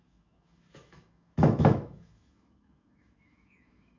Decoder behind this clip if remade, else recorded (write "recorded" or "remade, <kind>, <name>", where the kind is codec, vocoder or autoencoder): remade, autoencoder, DAC-VAE